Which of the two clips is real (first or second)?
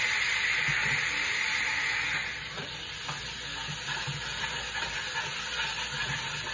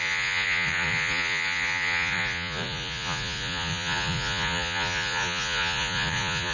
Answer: first